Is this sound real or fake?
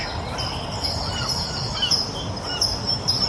real